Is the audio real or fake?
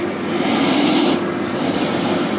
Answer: real